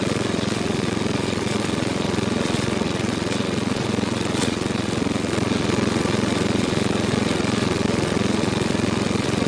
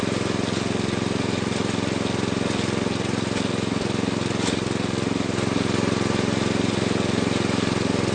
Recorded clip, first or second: second